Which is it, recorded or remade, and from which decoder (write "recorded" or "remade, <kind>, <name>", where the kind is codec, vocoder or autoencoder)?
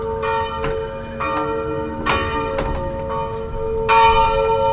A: recorded